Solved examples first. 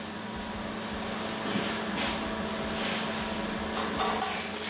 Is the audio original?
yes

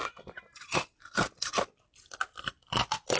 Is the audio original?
yes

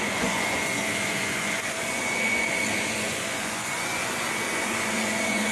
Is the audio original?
no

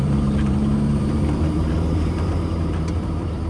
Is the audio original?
no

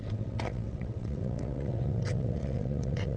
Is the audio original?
no